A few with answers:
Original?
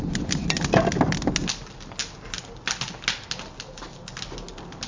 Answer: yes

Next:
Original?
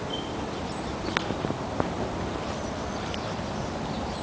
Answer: yes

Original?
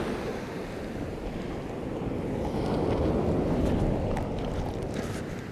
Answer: yes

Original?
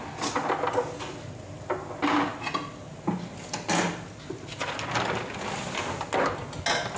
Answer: yes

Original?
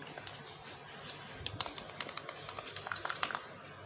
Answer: yes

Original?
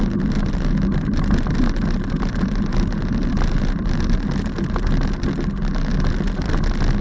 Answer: yes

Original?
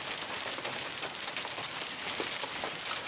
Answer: yes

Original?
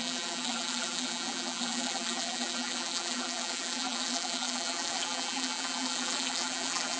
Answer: no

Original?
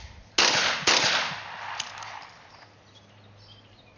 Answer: yes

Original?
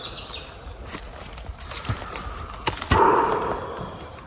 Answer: yes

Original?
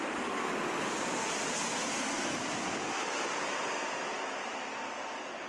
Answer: yes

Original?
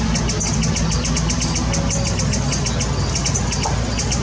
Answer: yes